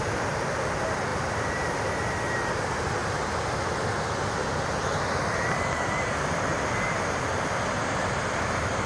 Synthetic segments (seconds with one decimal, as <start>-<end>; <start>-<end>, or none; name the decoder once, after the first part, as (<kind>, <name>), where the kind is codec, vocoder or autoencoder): none